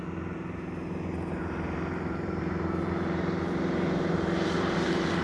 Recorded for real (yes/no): no